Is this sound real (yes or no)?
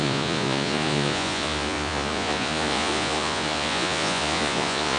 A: no